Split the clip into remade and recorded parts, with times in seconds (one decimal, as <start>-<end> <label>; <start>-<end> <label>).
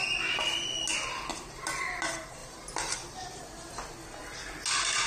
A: 0.0-2.4 recorded; 2.4-3.4 remade; 3.4-5.1 recorded